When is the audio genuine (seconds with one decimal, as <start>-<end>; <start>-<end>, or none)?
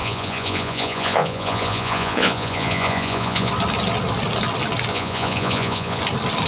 3.5-4.9; 6.0-6.5